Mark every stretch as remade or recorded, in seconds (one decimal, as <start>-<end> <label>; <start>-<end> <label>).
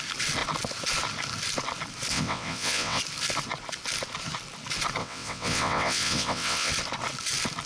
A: 0.0-2.1 recorded; 2.1-3.0 remade; 3.0-5.0 recorded; 5.0-6.7 remade; 6.7-7.7 recorded